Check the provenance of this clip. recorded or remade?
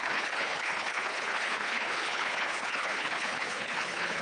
remade